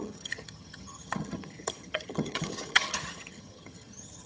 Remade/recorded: remade